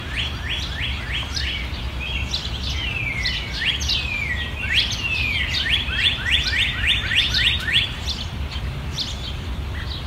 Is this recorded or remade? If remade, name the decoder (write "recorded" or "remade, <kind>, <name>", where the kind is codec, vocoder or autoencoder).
recorded